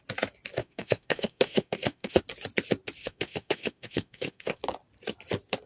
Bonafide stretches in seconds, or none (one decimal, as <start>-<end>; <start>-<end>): 0.0-0.6; 2.2-3.0; 4.6-5.7